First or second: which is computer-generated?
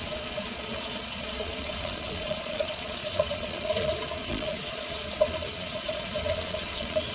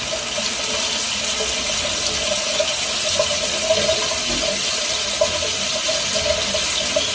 first